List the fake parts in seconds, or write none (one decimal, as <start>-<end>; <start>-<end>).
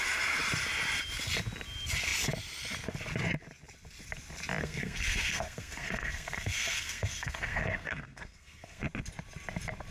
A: 4.6-8.8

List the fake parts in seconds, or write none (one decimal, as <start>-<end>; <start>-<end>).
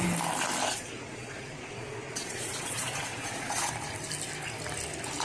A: 0.6-3.7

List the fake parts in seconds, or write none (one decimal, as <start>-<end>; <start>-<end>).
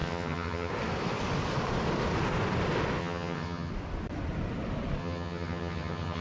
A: 0.0-0.7; 3.0-3.7; 5.0-6.2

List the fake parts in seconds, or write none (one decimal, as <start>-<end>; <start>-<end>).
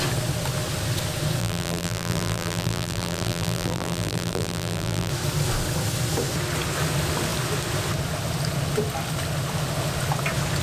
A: 1.4-5.1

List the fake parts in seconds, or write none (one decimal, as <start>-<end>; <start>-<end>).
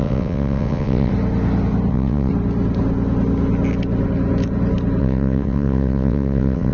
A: 0.0-1.1; 1.9-2.3; 5.0-6.7